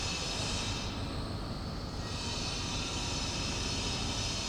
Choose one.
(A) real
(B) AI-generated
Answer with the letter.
A